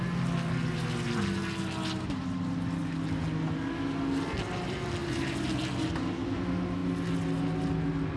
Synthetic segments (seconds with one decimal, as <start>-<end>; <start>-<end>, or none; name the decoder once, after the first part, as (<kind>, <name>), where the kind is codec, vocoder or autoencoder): none